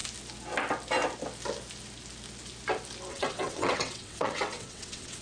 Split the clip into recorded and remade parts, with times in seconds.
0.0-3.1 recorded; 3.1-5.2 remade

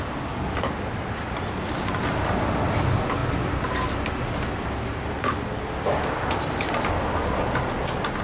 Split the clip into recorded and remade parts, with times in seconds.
0.0-8.2 recorded

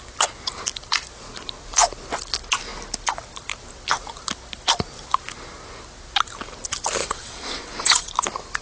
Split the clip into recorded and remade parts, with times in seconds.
0.0-7.0 recorded; 7.0-8.1 remade; 8.1-8.6 recorded

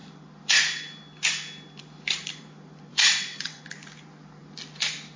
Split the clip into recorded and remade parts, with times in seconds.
0.0-2.9 recorded; 2.9-3.6 remade; 3.6-5.2 recorded

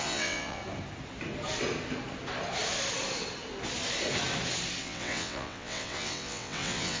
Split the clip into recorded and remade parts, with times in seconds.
0.0-0.6 remade; 0.6-4.8 recorded; 4.8-7.0 remade

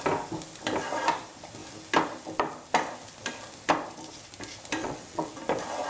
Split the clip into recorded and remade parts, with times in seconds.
0.0-4.8 recorded; 4.8-5.3 remade; 5.3-5.9 recorded